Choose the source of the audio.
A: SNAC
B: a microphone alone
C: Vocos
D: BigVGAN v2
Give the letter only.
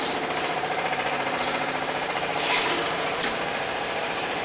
D